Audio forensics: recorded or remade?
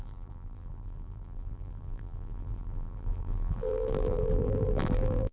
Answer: remade